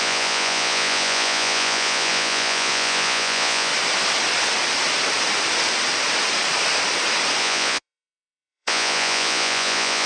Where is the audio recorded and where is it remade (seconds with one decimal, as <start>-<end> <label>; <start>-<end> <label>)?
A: 0.0-3.7 remade; 3.7-7.4 recorded; 7.4-10.1 remade